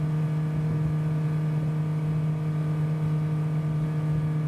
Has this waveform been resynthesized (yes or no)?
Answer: no